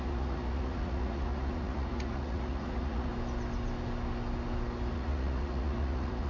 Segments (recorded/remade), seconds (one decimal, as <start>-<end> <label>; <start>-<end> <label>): 0.0-3.1 remade; 3.1-4.9 recorded; 4.9-6.3 remade